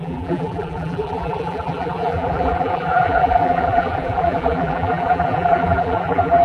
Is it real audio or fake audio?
fake